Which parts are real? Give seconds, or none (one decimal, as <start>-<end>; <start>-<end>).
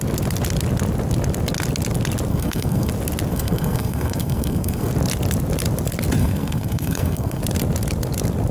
0.0-2.3; 2.9-3.3; 4.9-6.2; 7.4-8.5